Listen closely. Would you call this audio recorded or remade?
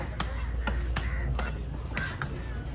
recorded